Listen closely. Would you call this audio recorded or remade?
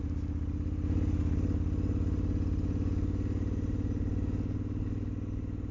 recorded